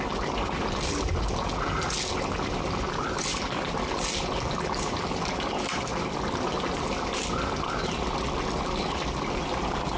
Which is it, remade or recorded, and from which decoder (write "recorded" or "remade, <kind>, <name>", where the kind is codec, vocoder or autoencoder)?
recorded